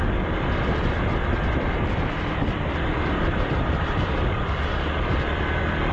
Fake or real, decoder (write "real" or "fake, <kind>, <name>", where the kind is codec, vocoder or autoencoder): fake, vocoder, BigVGAN v2